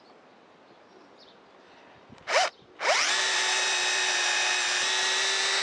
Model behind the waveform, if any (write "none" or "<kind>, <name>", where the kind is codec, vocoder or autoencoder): vocoder, BigVGAN v2